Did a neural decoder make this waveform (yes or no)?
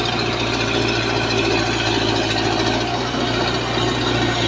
no